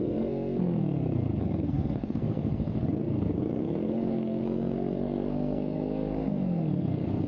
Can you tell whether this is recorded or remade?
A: remade